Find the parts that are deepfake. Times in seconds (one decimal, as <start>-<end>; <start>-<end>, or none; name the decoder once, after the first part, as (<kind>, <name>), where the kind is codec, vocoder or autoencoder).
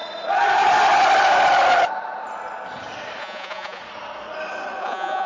3.2-3.8 (vocoder, Vocos); 4.8-5.3